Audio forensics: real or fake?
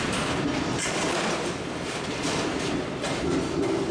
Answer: fake